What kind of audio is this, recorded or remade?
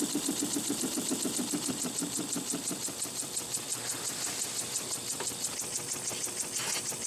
remade